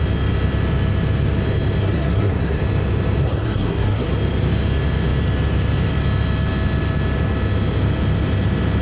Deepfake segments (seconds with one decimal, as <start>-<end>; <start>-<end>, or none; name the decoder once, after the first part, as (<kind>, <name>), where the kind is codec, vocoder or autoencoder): 1.8-2.6 (codec, SNAC); 3.2-4.1